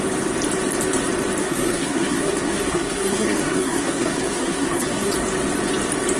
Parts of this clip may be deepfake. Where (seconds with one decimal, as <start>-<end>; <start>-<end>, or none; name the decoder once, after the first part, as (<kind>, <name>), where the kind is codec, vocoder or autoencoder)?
1.4-5.1 (codec, SNAC)